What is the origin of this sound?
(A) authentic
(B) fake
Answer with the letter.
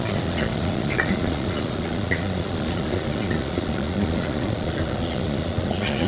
B